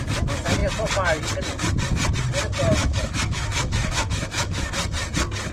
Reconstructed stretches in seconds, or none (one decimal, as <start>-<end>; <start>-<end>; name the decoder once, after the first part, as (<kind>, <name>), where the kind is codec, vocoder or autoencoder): 2.8-4.7 (autoencoder, DAC-VAE)